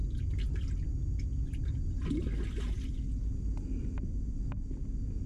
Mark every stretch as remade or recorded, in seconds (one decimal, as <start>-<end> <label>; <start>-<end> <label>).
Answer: 0.0-5.3 recorded